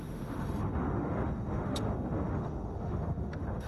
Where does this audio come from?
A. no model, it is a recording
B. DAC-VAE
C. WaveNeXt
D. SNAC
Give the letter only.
B